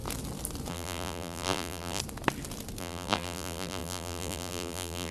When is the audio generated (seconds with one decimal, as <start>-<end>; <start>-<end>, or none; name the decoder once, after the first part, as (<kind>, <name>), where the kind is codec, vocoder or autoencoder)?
0.7-2.0 (vocoder, BigVGAN v2); 2.8-5.1